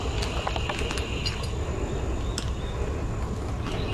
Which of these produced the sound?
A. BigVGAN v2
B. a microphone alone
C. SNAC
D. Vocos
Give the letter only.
B